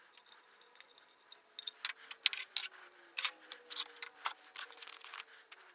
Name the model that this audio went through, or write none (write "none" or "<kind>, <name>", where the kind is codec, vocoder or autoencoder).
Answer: none